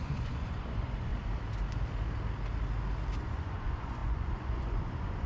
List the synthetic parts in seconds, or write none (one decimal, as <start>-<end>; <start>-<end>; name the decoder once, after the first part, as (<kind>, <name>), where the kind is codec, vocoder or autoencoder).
0.0-1.1 (vocoder, Vocos); 3.2-5.3